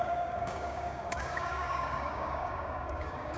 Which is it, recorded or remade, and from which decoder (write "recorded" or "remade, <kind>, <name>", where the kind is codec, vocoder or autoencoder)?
remade, codec, DAC